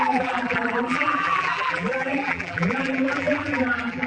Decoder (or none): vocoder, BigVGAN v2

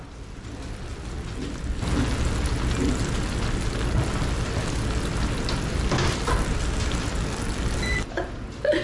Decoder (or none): none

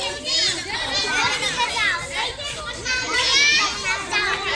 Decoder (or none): none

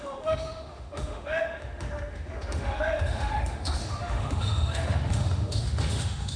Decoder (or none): autoencoder, DAC-VAE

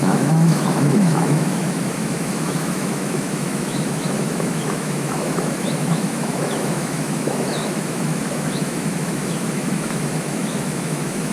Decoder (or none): autoencoder, DAC-VAE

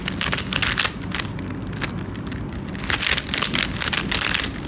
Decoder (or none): none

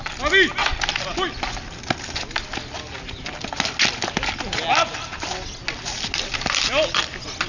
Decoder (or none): none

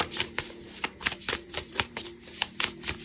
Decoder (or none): vocoder, BigVGAN v2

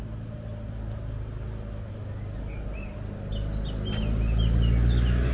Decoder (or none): none